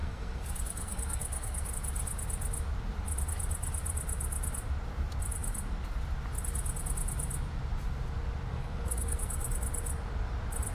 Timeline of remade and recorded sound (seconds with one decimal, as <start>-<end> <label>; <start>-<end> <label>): 0.0-1.7 remade; 1.7-8.5 recorded; 8.5-9.5 remade; 9.5-10.7 recorded